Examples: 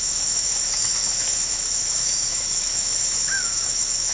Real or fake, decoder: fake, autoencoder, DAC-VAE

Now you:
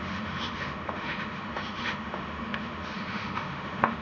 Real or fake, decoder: fake, autoencoder, DAC-VAE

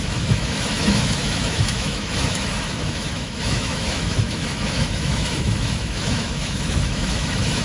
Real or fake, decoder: fake, autoencoder, DAC-VAE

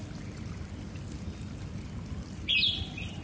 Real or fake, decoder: real